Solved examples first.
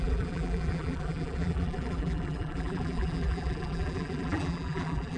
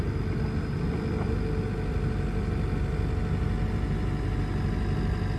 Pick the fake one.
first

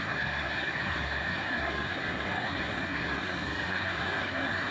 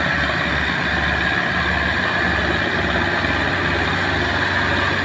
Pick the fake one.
first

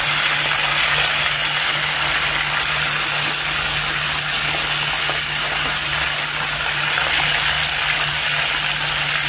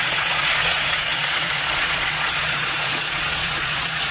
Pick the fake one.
second